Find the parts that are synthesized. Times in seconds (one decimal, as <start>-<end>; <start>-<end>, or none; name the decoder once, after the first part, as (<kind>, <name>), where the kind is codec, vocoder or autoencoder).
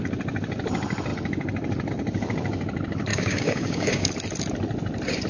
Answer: 3.1-4.1 (codec, DAC)